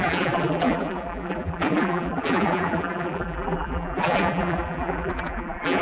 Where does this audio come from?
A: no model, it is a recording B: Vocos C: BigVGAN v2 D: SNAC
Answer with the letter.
C